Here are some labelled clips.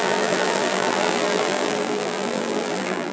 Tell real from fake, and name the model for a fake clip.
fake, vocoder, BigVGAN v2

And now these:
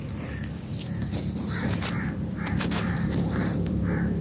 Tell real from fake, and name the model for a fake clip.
fake, vocoder, BigVGAN v2